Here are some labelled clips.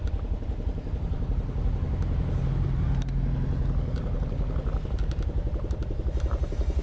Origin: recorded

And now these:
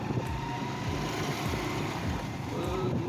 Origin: remade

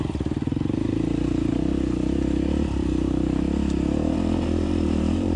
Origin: remade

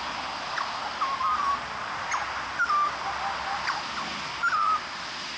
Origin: recorded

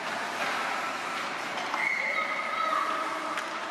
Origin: remade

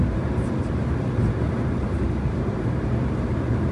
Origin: remade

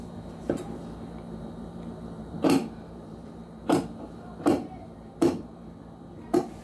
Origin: remade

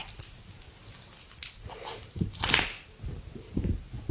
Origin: recorded